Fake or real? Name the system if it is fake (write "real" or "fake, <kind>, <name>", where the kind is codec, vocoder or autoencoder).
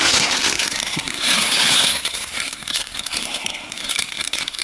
fake, codec, SNAC